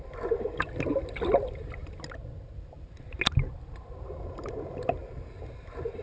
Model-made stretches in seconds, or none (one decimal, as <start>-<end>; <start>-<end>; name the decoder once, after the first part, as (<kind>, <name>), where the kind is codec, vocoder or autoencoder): none